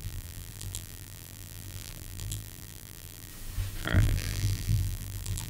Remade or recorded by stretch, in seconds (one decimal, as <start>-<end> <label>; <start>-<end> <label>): 0.0-3.3 remade; 3.3-3.8 recorded; 3.8-5.5 remade